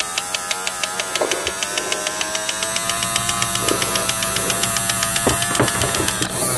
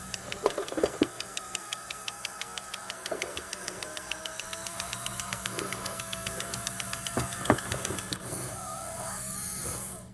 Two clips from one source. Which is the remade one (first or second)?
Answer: second